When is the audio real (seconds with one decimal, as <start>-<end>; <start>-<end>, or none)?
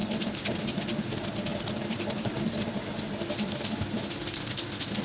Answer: 0.8-1.5; 2.4-5.0